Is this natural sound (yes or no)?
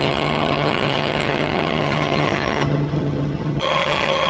no